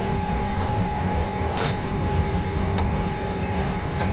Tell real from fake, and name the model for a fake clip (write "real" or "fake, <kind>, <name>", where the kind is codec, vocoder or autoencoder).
fake, codec, DAC